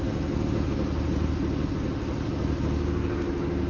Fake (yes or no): no